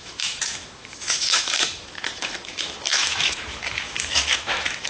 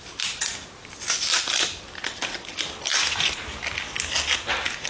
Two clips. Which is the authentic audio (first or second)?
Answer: second